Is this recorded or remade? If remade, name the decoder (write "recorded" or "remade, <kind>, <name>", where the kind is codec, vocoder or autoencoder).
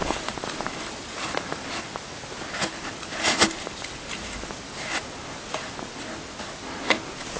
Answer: recorded